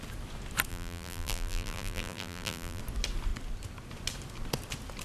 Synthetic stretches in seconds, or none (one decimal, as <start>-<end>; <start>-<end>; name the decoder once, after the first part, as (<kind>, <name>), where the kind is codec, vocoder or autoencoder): 0.7-2.8 (vocoder, BigVGAN v2)